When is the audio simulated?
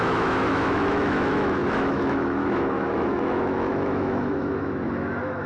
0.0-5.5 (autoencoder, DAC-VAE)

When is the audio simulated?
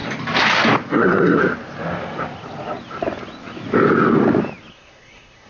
0.9-1.4 (codec, SNAC); 4.7-5.5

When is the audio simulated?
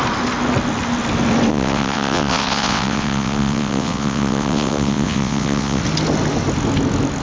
1.5-5.8 (vocoder, WaveNeXt)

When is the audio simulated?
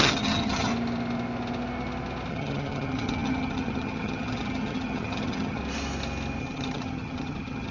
0.0-0.7 (vocoder, HiFi-GAN); 2.3-5.6; 6.4-7.7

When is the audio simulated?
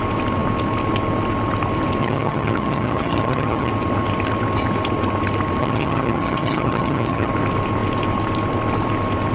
2.0-3.7 (vocoder, HiFi-GAN); 5.6-7.3